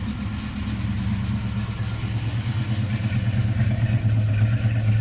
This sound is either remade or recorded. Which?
recorded